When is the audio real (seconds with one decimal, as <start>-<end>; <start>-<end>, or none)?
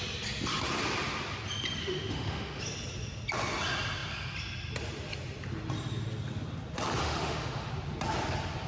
0.0-1.8; 2.6-7.0; 7.7-8.7